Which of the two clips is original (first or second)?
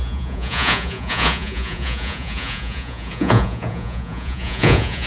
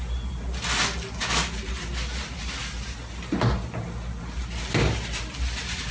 second